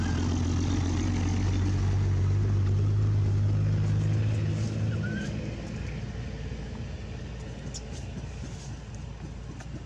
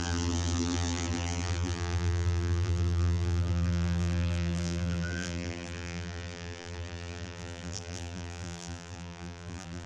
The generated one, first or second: second